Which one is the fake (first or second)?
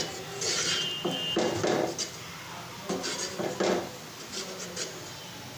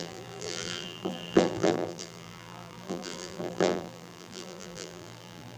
second